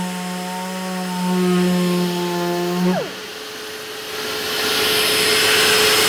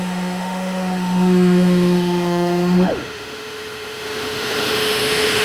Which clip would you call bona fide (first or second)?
first